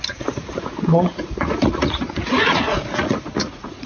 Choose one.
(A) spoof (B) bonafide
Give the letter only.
A